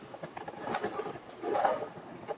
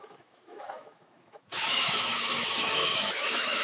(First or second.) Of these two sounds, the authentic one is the first